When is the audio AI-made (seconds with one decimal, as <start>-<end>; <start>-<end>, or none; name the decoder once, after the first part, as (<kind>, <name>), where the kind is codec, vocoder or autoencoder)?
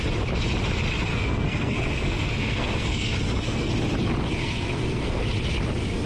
1.1-3.7 (codec, SNAC); 4.4-5.2